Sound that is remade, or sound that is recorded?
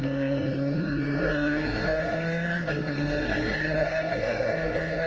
remade